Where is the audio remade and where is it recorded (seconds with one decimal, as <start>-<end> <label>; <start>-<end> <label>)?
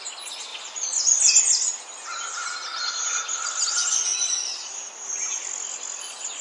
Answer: 0.0-6.4 recorded